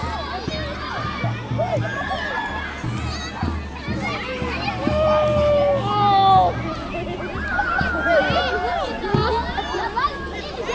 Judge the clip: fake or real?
real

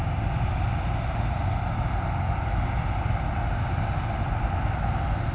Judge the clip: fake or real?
real